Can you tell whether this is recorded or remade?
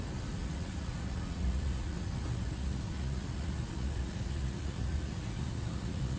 remade